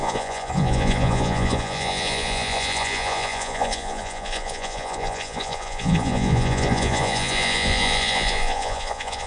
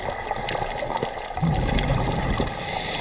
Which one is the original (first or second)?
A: second